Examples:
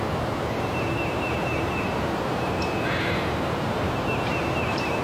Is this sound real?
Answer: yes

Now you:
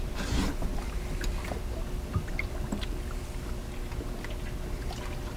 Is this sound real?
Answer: yes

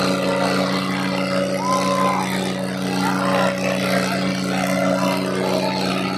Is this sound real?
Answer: yes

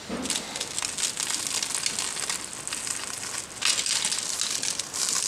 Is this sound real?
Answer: yes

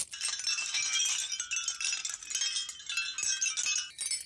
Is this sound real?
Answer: yes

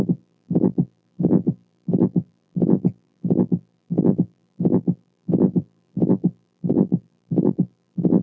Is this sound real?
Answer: no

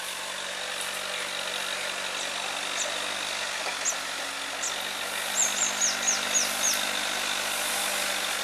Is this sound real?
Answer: yes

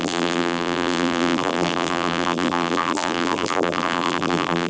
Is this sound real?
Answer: no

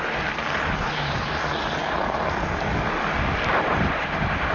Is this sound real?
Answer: yes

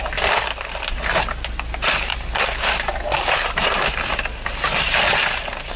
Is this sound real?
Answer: yes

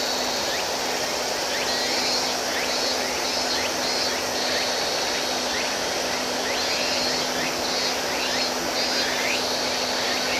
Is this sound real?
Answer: yes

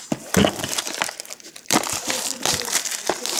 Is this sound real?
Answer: no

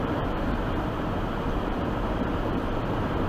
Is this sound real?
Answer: no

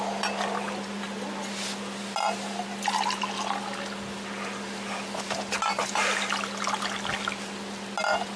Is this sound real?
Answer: yes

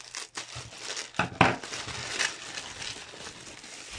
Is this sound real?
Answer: yes